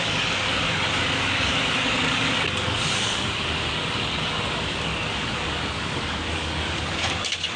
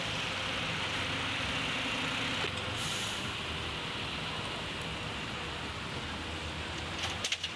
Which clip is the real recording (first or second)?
second